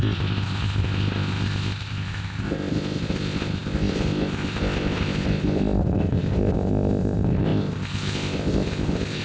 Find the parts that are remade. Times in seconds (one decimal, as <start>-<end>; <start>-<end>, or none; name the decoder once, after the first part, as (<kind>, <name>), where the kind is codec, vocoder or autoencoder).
0.0-9.2 (codec, ZipCodec)